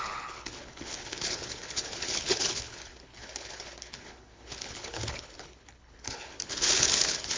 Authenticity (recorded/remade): remade